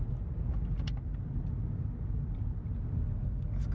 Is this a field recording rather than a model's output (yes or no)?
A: yes